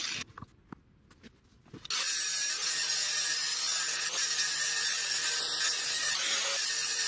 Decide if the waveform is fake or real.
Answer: real